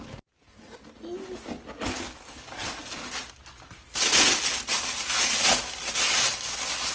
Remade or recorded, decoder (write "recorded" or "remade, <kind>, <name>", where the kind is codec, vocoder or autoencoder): recorded